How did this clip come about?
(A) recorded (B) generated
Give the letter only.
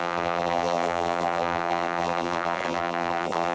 B